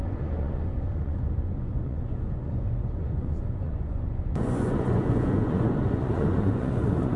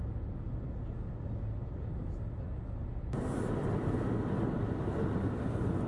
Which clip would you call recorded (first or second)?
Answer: second